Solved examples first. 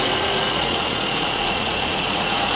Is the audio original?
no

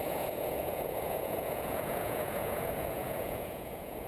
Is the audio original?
no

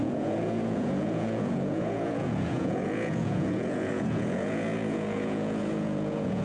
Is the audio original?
no